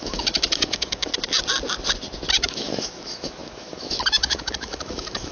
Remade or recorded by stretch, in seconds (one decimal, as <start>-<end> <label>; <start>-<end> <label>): 0.0-1.1 remade; 1.1-2.3 recorded; 2.3-5.3 remade